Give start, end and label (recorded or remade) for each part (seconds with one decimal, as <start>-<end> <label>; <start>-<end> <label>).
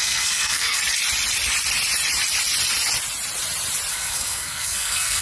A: 0.0-0.8 remade; 0.8-3.9 recorded; 3.9-5.2 remade